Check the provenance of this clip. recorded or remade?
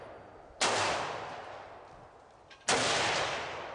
recorded